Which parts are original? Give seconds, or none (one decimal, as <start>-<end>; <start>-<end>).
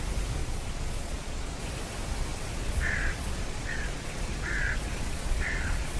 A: 0.0-0.4; 1.6-2.3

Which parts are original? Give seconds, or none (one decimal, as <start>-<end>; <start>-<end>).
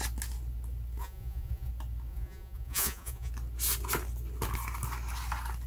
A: 0.0-1.0; 1.7-2.1; 3.3-5.7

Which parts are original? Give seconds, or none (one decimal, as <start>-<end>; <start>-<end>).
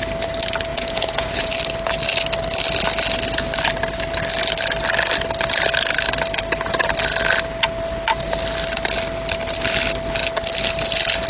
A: 0.0-0.7; 1.5-11.3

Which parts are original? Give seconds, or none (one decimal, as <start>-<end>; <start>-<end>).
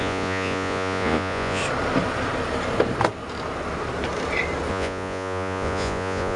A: 1.6-4.7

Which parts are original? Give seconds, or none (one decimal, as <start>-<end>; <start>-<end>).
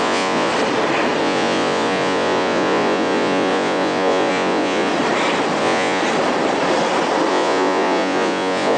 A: 0.5-1.2; 4.9-5.6; 6.0-7.3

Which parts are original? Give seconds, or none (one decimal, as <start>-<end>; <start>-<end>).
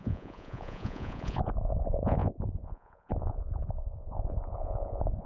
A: none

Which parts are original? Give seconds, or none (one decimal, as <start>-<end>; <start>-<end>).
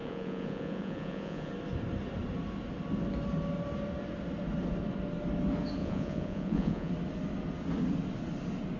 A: 1.5-5.8; 6.9-8.8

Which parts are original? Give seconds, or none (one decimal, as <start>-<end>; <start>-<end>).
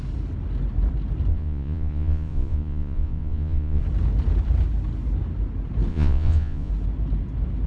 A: 0.0-1.3; 3.8-5.9; 6.7-7.7